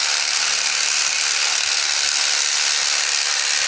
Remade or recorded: recorded